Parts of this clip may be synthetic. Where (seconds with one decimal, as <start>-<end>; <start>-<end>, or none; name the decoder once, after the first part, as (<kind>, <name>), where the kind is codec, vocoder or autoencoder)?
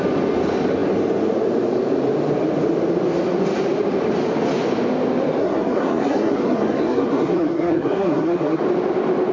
5.4-8.6 (codec, SNAC)